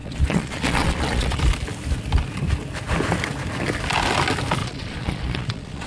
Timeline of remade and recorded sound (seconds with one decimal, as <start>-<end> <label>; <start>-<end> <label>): 0.0-1.4 remade; 1.4-4.6 recorded; 4.6-5.9 remade